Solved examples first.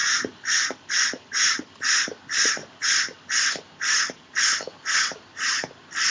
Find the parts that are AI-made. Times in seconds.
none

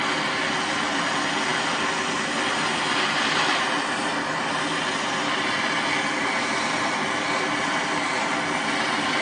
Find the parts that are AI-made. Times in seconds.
none

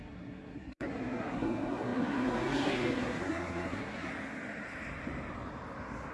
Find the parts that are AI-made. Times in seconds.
0.0-4.1 (codec, SNAC)

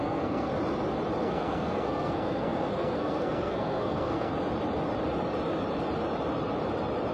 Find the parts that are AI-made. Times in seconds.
0.0-0.5 (codec, SNAC); 1.2-4.3

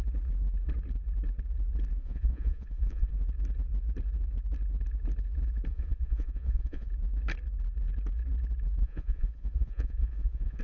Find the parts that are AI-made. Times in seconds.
2.0-3.1 (vocoder, Vocos); 5.7-6.9; 8.8-10.6

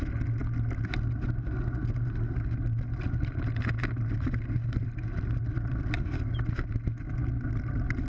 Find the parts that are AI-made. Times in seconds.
none

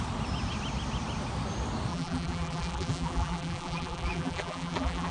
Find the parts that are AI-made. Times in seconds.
1.9-5.1 (vocoder, BigVGAN v2)